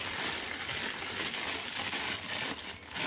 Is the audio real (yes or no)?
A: yes